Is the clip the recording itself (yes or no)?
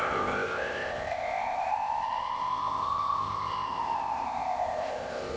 no